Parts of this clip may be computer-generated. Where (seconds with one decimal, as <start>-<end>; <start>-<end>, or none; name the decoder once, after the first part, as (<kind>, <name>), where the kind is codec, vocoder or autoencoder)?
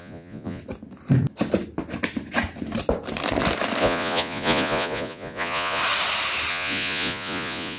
0.0-0.6 (vocoder, Vocos); 3.8-5.8; 6.5-7.8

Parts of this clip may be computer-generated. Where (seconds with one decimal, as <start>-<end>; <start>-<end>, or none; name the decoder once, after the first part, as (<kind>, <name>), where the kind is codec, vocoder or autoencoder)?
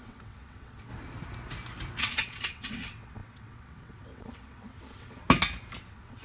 0.0-0.9 (vocoder, WaveNeXt); 2.0-5.2; 5.8-6.2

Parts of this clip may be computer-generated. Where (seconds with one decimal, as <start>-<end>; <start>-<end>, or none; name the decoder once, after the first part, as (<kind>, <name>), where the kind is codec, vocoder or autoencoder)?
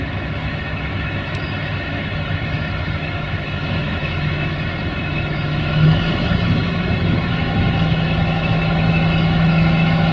0.0-10.1 (autoencoder, DAC-VAE)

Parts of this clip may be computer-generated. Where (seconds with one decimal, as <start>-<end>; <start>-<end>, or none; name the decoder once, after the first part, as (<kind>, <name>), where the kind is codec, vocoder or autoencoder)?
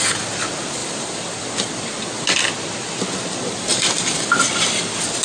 0.8-1.7 (vocoder, BigVGAN v2); 3.7-4.8